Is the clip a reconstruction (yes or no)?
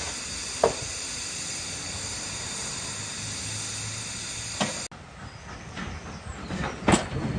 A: no